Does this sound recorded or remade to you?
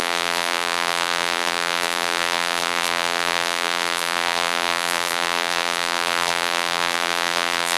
remade